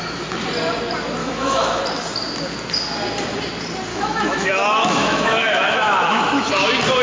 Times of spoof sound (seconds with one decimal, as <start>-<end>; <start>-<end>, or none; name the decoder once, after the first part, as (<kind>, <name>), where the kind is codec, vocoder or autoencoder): 1.2-1.8 (autoencoder, DAC-VAE); 3.9-6.5